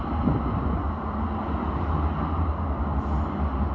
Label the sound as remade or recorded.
recorded